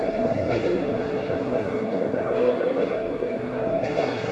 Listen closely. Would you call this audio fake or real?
fake